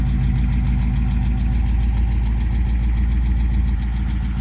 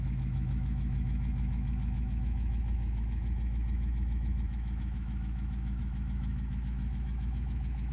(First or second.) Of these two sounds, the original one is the first